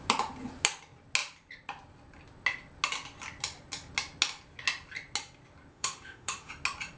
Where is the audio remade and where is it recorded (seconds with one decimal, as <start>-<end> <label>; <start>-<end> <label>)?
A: 0.0-5.7 recorded; 5.7-6.5 remade; 6.5-7.0 recorded